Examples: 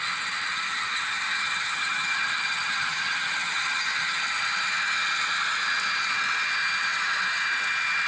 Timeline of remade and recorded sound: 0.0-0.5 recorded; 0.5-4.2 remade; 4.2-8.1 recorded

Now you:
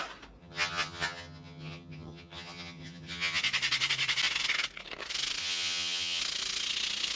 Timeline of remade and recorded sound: 0.0-0.4 recorded; 0.4-3.4 remade; 3.4-5.4 recorded; 5.4-6.2 remade; 6.2-7.2 recorded

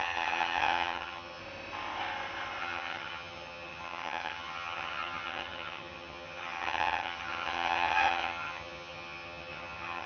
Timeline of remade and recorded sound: 0.0-1.4 remade; 1.4-2.6 recorded; 2.6-10.1 remade